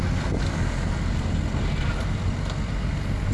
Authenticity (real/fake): real